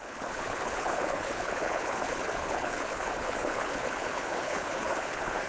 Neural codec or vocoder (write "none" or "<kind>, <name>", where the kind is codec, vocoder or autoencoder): codec, HILCodec